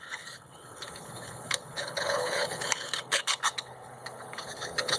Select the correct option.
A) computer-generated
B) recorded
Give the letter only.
A